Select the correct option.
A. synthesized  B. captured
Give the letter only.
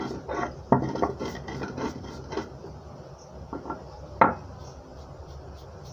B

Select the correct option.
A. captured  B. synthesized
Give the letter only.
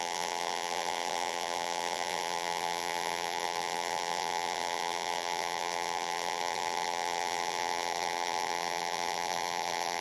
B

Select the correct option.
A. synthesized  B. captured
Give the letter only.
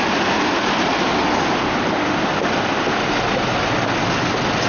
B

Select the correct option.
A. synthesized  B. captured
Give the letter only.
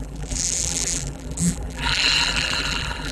A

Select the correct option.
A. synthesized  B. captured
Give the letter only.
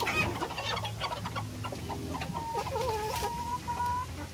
B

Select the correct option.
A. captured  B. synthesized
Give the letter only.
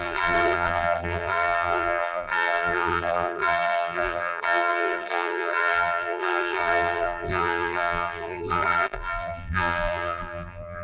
B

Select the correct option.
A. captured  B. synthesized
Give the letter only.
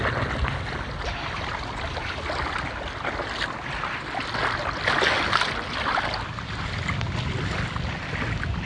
A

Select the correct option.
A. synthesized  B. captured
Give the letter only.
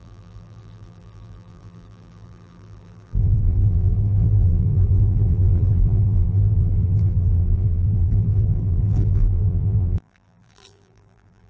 A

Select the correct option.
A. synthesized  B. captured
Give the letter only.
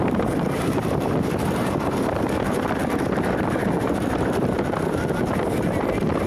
A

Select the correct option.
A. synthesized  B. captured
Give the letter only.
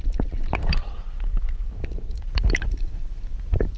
A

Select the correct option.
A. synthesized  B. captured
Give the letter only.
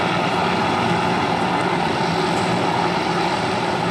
A